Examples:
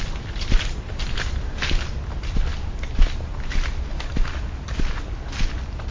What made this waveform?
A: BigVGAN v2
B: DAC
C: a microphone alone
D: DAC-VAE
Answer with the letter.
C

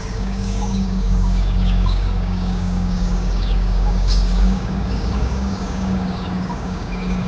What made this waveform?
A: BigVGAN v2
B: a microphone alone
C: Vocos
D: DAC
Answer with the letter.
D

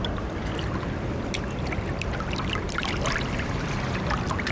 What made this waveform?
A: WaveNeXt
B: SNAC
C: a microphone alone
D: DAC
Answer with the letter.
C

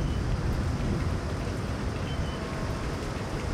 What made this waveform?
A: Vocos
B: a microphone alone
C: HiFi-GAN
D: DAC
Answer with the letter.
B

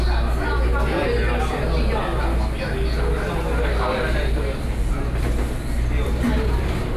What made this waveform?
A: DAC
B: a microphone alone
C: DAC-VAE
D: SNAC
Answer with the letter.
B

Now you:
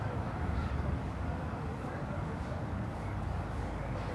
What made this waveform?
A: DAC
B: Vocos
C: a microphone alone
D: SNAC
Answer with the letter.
A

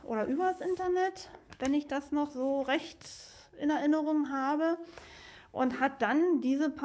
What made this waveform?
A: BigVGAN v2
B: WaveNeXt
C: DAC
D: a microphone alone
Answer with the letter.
C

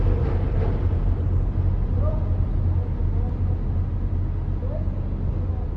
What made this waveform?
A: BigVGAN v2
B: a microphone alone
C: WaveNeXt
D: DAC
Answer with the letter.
B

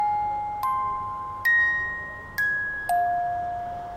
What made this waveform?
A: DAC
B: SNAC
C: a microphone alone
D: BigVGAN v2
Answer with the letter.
C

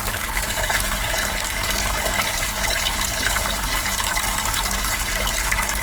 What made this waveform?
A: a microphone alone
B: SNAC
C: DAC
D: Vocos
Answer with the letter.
C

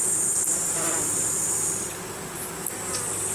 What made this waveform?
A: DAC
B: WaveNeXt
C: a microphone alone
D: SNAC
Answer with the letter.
C